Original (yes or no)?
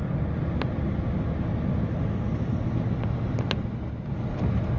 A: yes